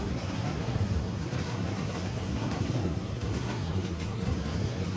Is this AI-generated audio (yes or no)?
yes